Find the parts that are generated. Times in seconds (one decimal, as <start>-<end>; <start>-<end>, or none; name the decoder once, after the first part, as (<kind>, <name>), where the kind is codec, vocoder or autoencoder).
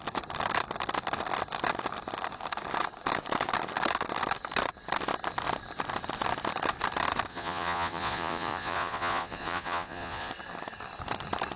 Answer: 7.3-10.3 (vocoder, Vocos)